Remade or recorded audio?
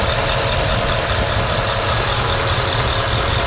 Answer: recorded